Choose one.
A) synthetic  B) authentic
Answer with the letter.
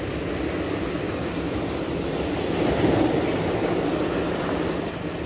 B